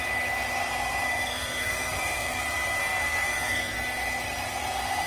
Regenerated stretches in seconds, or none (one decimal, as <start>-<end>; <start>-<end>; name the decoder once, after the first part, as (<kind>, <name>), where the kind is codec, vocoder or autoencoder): 1.1-2.4 (codec, SNAC); 2.8-3.7